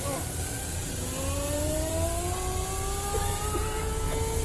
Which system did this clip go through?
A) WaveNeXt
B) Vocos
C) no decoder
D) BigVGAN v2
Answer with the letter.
C